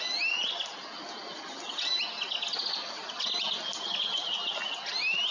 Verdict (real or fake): real